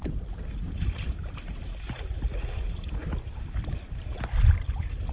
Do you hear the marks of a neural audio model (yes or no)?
no